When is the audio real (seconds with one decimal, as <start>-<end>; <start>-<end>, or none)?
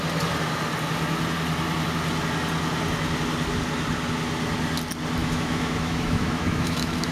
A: 0.0-5.2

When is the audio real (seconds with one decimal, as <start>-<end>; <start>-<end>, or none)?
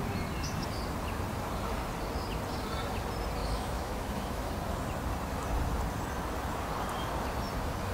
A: 0.0-3.4; 4.5-7.9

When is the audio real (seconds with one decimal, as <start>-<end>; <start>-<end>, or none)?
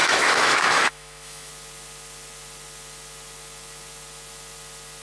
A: 1.5-5.0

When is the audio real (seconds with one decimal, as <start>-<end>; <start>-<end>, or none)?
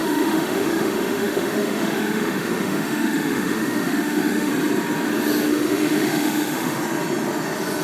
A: 4.5-5.5; 6.8-7.8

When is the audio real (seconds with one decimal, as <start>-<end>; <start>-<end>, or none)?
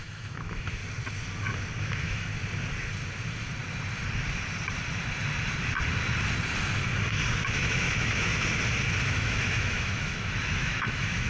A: 0.8-1.8; 2.3-7.5; 8.3-9.0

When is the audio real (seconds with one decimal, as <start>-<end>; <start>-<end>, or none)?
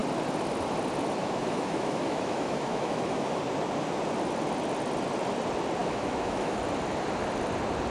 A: 0.0-1.2; 3.4-5.8; 6.6-7.9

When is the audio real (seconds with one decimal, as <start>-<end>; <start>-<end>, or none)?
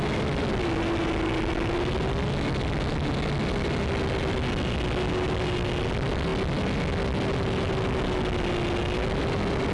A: 0.0-9.7